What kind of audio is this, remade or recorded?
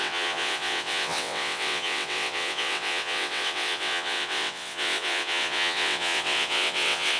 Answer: remade